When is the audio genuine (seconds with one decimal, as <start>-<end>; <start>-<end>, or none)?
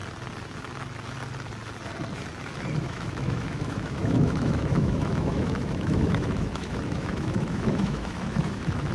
0.0-2.8